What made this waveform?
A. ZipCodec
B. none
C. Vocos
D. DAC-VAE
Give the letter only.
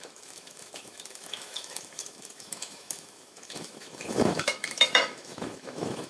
D